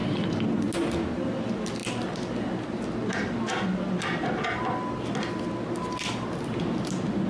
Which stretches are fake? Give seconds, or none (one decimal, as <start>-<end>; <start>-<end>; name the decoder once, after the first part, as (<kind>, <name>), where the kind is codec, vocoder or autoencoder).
1.8-5.0 (vocoder, BigVGAN v2)